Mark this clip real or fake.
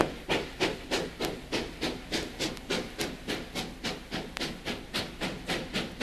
real